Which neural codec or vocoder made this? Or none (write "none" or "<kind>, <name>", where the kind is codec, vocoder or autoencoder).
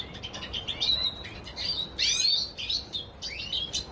none